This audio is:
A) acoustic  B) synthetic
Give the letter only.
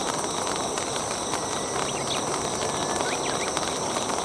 A